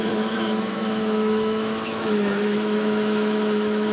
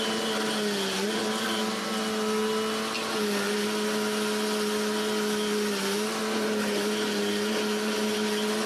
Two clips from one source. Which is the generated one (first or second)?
first